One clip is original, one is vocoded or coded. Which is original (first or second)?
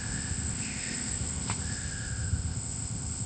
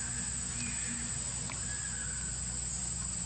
second